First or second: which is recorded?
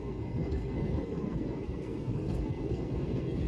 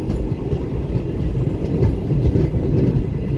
second